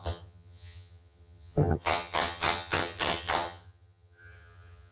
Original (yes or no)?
no